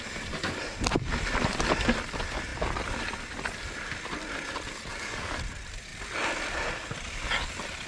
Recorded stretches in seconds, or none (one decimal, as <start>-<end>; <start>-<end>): 0.0-4.9; 5.4-7.9

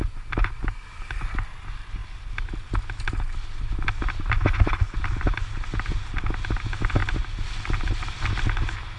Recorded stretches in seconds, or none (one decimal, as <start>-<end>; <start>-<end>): 0.0-9.0

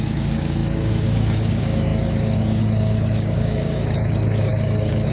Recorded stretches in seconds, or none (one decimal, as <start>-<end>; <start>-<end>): none

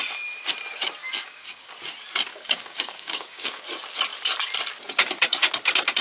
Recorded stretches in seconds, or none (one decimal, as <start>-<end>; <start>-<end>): 0.0-1.2; 1.7-2.3; 3.6-6.0

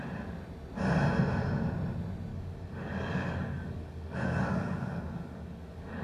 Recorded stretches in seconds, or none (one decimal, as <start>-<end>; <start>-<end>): 0.0-2.3

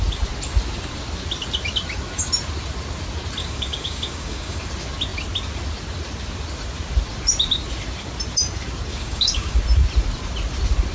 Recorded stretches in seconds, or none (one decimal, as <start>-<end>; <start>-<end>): 0.0-3.4; 4.6-8.9; 9.6-10.9

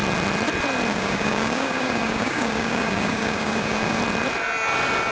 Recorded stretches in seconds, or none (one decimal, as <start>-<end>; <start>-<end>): 0.0-0.9; 4.0-5.1

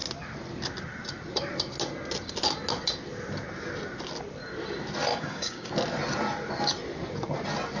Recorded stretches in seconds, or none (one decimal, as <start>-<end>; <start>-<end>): 0.0-5.1; 5.7-7.8